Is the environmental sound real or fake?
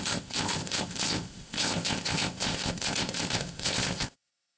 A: fake